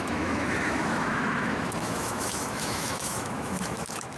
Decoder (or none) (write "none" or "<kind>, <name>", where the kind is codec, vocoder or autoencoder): autoencoder, DAC-VAE